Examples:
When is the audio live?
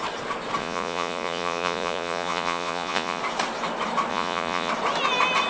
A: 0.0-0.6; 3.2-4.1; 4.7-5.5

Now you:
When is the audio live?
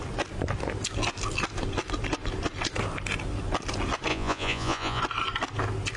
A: 0.0-4.1; 5.0-6.0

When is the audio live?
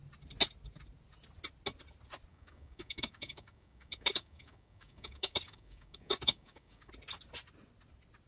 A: 0.0-2.3; 6.9-8.3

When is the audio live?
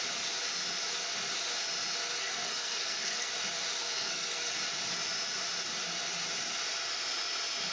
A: 0.0-2.2; 3.3-3.8; 4.6-7.7